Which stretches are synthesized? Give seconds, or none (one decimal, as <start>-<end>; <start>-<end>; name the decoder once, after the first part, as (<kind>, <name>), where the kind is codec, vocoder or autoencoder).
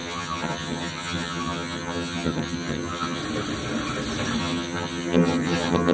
0.0-3.2 (vocoder, HiFi-GAN); 4.4-5.9